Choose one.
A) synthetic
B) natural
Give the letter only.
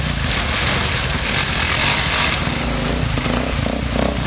B